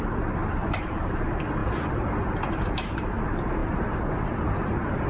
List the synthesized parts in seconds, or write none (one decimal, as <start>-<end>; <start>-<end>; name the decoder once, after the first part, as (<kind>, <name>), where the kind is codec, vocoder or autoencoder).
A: 0.4-1.2 (vocoder, BigVGAN v2); 1.6-3.1